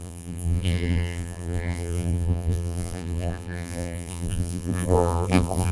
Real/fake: fake